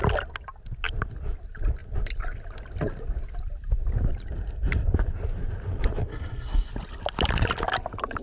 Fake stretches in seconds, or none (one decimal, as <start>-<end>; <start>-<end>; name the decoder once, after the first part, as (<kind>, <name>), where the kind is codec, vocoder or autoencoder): 6.1-6.7 (codec, SNAC)